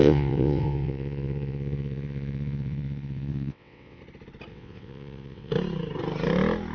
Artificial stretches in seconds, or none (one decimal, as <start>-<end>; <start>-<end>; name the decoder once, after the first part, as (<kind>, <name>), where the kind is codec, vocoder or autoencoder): 0.0-4.0 (vocoder, WaveNeXt); 4.5-5.5